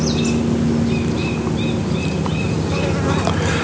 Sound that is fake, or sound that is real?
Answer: real